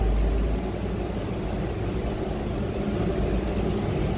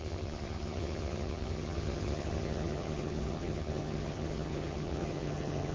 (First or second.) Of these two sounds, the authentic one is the first